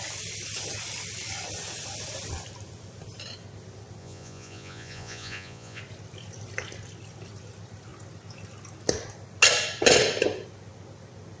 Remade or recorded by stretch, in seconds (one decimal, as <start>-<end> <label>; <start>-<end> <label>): 0.0-4.0 recorded; 4.0-5.8 remade; 5.8-11.4 recorded